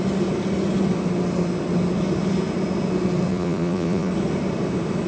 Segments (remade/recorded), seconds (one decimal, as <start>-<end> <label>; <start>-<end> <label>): 0.0-3.3 recorded; 3.3-4.1 remade; 4.1-5.1 recorded